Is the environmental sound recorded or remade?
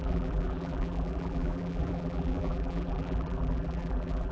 remade